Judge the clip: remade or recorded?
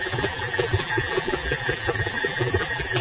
remade